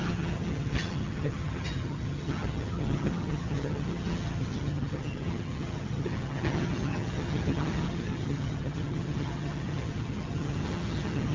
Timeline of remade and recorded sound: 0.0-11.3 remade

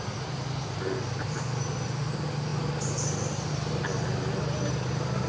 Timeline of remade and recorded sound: 0.0-5.3 recorded

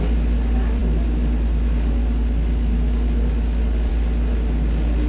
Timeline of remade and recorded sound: 0.0-5.1 recorded

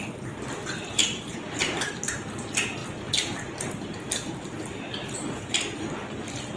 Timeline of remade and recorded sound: 0.0-1.0 recorded; 1.0-1.9 remade; 1.9-6.6 recorded